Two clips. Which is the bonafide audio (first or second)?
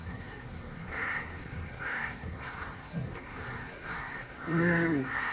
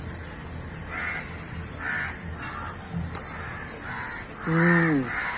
second